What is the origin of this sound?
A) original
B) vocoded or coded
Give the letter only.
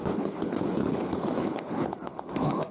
B